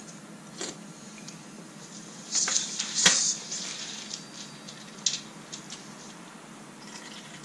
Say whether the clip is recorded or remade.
recorded